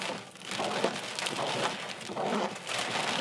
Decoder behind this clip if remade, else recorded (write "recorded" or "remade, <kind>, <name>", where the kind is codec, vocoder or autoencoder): recorded